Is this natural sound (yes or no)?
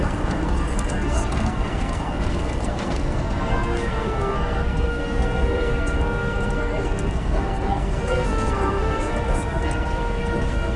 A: no